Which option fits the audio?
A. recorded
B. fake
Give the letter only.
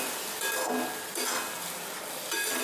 A